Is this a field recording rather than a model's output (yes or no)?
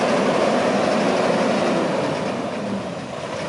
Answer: yes